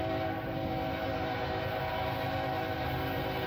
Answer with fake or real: real